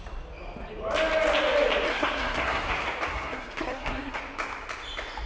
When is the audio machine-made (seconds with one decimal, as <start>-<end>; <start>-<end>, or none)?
1.9-2.7; 3.1-4.2